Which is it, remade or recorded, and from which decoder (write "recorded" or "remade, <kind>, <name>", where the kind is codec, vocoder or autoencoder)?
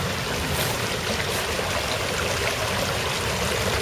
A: recorded